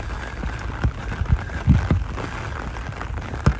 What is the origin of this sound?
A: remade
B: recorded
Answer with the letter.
B